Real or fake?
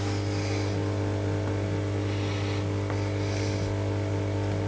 real